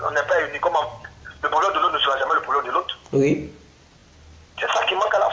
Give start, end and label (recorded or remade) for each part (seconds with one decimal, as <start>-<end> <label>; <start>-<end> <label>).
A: 0.0-5.3 recorded